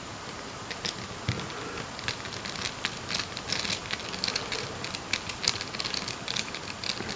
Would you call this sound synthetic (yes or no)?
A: no